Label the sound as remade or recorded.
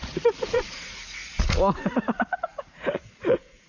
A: remade